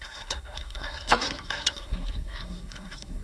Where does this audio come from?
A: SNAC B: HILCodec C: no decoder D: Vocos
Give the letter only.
A